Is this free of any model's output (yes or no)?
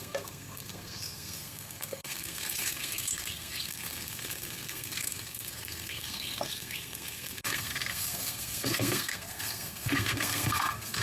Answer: no